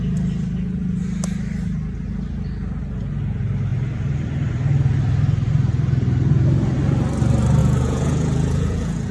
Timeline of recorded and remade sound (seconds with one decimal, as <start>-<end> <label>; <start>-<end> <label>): 0.0-7.6 recorded; 7.6-9.1 remade